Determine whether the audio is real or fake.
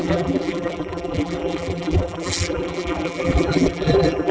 fake